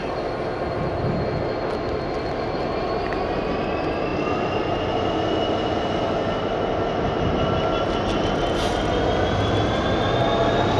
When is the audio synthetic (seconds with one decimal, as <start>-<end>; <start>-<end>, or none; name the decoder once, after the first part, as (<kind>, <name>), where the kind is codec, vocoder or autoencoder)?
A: none